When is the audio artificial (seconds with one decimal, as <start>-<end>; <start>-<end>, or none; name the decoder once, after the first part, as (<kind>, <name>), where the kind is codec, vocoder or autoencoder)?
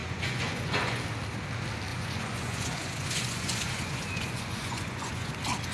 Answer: 0.0-1.0 (vocoder, Vocos); 1.9-5.3